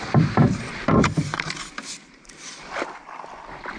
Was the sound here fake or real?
real